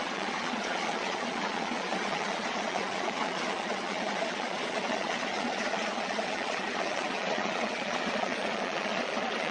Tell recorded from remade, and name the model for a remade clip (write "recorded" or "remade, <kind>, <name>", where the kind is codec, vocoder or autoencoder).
remade, vocoder, Vocos